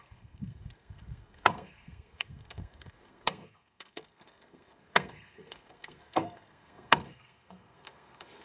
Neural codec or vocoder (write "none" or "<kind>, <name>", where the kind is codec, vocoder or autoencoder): codec, SNAC